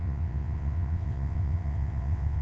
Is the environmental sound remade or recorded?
remade